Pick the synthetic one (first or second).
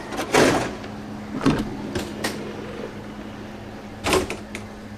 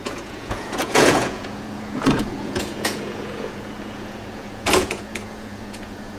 second